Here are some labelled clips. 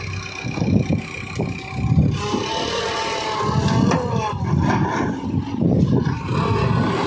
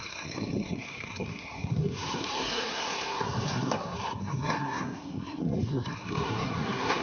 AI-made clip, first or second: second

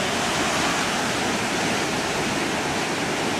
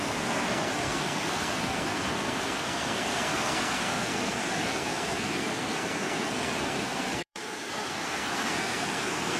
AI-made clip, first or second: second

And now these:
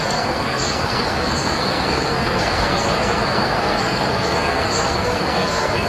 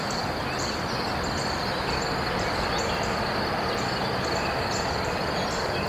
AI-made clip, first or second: first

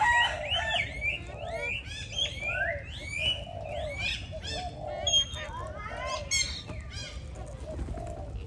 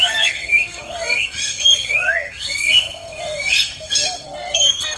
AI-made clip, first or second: second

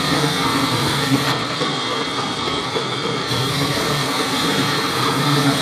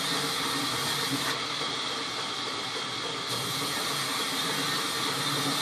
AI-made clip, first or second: first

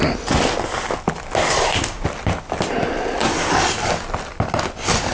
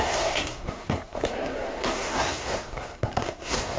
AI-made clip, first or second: second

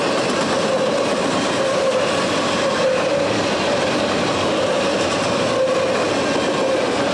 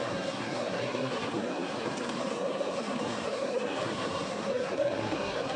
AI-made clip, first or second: second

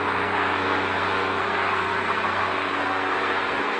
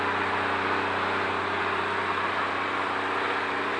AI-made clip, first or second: first